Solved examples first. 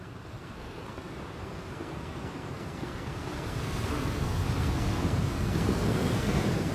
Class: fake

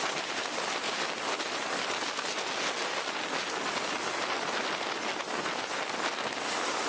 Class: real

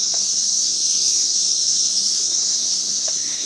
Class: fake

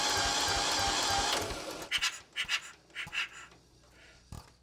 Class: real